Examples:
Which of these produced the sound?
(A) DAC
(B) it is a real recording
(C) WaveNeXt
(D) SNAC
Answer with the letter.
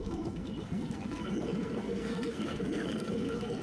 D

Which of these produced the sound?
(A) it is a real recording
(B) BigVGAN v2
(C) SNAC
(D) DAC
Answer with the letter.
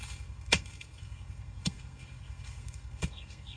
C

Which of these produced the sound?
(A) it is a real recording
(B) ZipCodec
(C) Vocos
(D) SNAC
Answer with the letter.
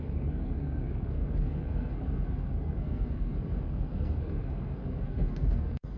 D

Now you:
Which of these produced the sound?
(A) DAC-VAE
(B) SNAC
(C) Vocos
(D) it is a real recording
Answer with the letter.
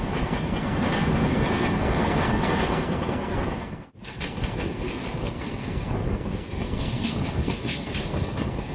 B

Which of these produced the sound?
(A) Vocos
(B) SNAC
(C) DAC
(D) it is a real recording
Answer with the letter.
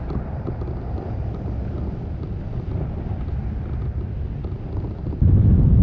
D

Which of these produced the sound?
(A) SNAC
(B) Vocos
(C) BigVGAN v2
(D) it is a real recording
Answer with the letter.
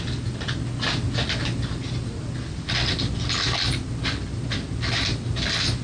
D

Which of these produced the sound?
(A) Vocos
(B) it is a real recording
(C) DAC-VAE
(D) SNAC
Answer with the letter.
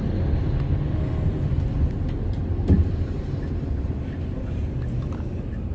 B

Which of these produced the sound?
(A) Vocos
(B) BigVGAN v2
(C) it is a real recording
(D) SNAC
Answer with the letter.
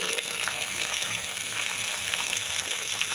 D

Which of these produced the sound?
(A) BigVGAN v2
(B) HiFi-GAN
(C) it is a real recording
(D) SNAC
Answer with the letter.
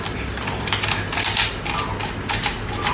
C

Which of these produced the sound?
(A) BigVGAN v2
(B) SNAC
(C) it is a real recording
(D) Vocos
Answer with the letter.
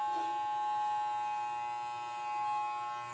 C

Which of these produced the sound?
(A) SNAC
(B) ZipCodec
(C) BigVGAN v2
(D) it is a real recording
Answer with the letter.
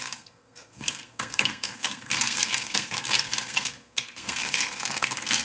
A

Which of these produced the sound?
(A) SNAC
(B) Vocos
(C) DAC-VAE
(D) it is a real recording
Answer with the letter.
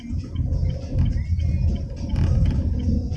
D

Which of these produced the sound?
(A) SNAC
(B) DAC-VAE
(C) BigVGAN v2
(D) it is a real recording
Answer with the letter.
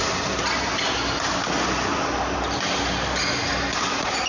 D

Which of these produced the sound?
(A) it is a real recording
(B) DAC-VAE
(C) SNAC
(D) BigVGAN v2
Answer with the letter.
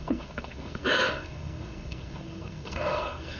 C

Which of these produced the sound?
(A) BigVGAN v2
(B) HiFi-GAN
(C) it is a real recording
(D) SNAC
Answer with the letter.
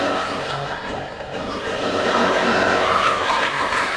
D